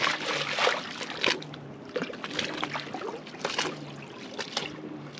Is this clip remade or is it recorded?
recorded